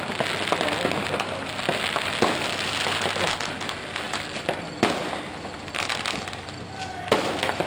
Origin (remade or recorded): recorded